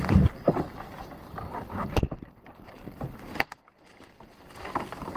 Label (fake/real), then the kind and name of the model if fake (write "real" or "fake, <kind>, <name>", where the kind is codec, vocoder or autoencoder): fake, vocoder, BigVGAN v2